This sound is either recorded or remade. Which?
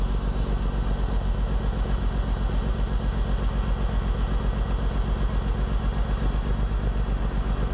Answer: recorded